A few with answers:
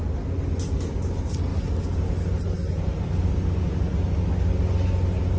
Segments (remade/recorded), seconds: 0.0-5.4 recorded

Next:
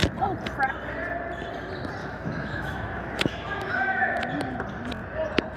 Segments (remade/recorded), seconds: 0.0-2.0 recorded; 2.0-4.2 remade; 4.2-5.6 recorded